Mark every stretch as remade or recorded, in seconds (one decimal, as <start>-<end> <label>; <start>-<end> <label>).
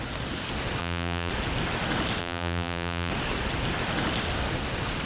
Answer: 0.0-0.8 recorded; 0.8-1.3 remade; 1.3-2.2 recorded; 2.2-3.1 remade; 3.1-5.1 recorded